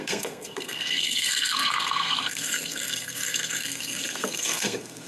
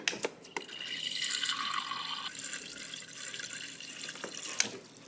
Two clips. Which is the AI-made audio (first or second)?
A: first